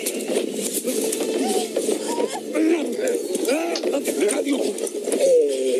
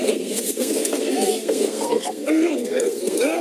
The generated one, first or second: second